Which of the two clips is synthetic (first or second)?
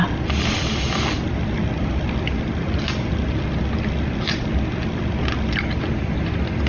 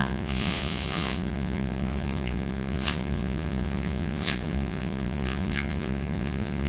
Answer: second